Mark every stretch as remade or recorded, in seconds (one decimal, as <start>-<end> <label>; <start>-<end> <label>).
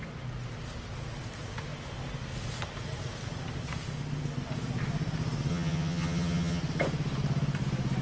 0.0-5.5 recorded; 5.5-6.6 remade; 6.6-8.0 recorded